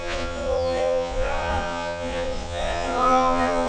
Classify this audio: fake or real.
fake